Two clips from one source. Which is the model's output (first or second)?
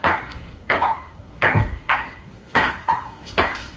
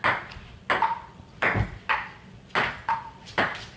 first